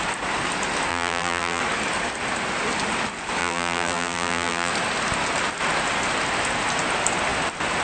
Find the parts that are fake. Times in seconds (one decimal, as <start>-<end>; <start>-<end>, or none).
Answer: 0.9-1.6; 3.4-4.7